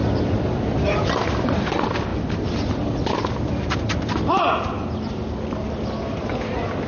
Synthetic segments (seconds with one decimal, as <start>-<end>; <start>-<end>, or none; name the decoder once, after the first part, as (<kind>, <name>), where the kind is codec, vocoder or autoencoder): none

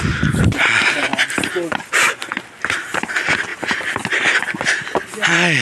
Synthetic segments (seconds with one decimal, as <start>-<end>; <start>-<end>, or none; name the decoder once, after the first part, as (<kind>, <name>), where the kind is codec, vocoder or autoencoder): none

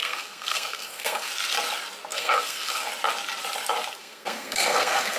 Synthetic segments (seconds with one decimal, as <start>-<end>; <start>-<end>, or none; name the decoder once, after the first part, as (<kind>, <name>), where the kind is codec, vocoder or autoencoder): 0.0-1.3 (codec, SNAC); 2.1-2.9; 4.0-5.2

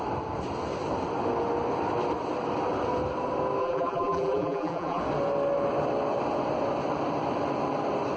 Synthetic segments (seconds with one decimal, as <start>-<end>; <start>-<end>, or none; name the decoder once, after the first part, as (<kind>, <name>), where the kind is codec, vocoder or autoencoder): 3.6-5.0 (vocoder, BigVGAN v2)

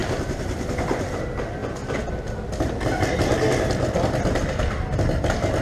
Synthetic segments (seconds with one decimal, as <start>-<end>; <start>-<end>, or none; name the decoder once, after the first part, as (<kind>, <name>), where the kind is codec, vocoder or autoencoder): 0.0-1.2 (vocoder, BigVGAN v2)

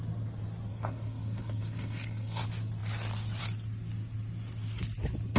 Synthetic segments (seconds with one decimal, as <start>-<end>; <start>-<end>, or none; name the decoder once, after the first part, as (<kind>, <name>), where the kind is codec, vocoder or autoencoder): 0.7-2.4 (codec, SNAC)

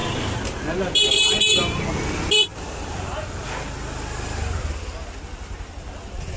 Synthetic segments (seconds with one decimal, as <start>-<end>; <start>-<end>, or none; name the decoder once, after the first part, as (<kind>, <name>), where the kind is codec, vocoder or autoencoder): none

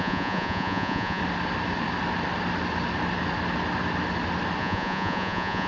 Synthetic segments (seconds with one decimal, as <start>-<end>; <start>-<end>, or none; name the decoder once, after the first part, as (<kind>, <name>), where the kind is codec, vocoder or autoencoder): 0.0-1.2 (vocoder, Vocos); 4.6-5.7